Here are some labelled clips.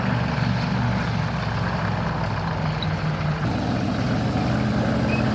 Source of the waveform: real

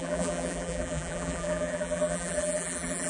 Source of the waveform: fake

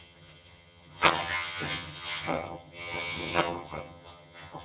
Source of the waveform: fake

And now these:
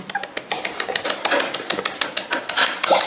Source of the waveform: real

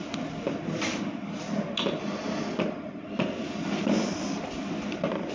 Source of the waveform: real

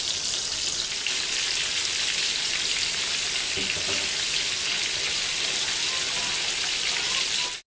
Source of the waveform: real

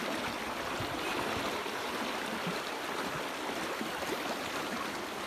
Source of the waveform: fake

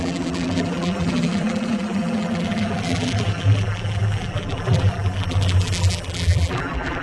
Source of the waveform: fake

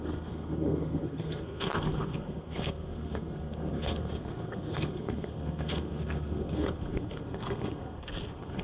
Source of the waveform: fake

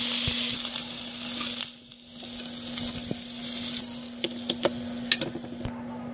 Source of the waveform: real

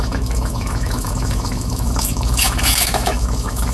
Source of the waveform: fake